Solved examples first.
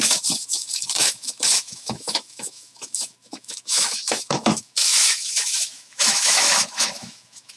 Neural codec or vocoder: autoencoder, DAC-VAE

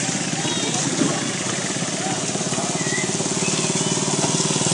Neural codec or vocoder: none